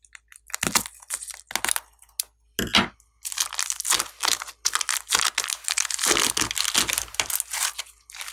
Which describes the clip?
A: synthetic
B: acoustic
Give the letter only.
B